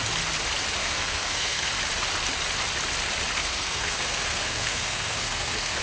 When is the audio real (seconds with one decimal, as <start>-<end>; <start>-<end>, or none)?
0.0-0.8; 1.7-3.4